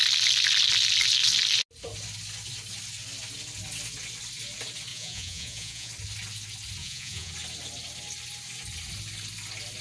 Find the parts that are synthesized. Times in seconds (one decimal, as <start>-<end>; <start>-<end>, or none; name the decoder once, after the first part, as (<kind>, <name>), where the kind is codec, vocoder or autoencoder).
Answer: 4.9-5.9 (vocoder, Vocos); 6.8-7.3